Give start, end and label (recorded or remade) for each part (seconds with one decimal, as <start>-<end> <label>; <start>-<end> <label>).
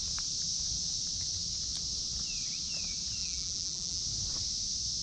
0.0-3.2 recorded; 3.2-4.0 remade; 4.0-5.0 recorded